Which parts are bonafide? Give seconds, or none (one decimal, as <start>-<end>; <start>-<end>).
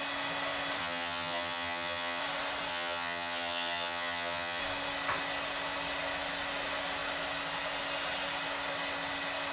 0.0-0.8; 2.2-2.7; 4.6-9.5